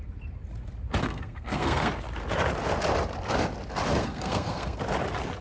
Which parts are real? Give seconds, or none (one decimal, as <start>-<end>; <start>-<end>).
0.0-1.0; 1.9-4.0; 4.8-5.4